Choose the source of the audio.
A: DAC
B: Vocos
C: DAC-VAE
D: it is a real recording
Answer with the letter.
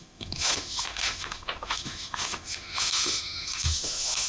C